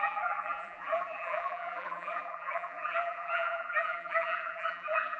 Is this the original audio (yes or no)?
no